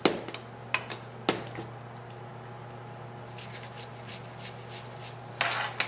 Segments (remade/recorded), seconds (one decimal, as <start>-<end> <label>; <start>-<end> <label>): 0.0-5.9 recorded